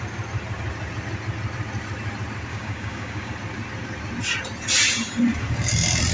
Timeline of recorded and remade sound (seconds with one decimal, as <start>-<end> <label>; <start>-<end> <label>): 0.0-2.5 recorded; 2.5-3.3 remade; 3.3-6.1 recorded

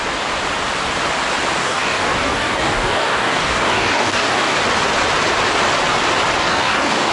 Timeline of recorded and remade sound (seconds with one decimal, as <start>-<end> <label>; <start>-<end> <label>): 0.0-1.6 recorded; 1.6-4.6 remade; 4.6-6.4 recorded; 6.4-7.1 remade

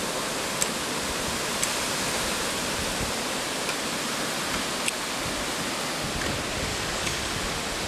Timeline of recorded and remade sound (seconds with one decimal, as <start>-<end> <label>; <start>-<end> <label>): 0.0-6.7 recorded; 6.7-7.4 remade; 7.4-7.9 recorded

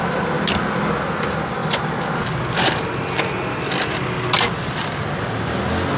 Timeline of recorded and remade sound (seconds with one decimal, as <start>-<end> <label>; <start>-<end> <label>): 0.0-6.0 recorded

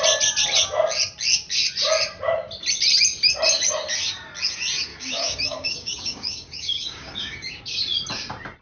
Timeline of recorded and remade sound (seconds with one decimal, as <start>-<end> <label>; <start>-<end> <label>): 0.0-4.9 recorded; 4.9-7.6 remade; 7.6-8.6 recorded